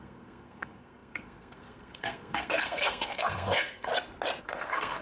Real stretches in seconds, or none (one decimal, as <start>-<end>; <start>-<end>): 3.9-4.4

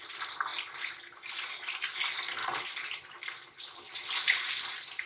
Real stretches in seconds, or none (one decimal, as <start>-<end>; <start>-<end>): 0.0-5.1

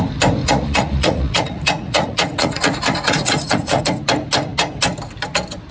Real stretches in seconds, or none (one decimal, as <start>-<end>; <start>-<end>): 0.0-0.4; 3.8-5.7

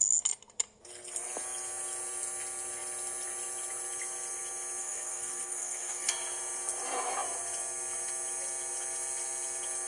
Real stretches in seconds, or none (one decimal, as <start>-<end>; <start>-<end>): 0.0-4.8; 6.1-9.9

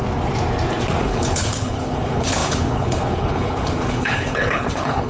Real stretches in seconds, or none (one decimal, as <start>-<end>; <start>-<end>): 0.0-1.0

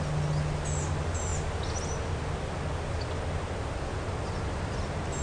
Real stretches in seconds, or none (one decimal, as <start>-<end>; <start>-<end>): 0.0-5.2